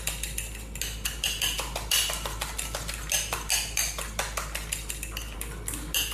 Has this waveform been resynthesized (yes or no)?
no